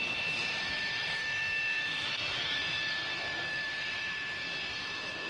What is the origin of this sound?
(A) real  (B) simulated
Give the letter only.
B